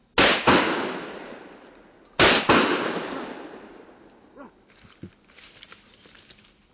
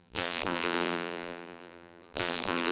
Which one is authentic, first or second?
first